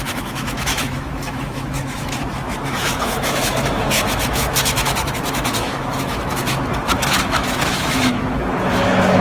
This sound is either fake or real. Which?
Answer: fake